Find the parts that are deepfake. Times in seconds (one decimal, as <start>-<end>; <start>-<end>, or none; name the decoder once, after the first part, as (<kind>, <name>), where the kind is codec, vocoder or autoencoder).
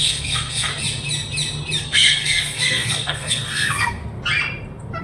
0.0-0.7 (codec, SNAC); 1.8-4.0